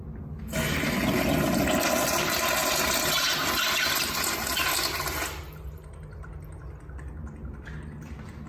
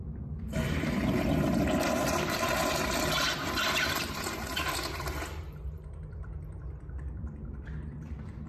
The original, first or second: first